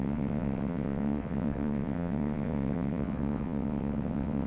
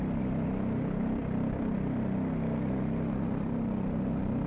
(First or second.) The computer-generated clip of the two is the first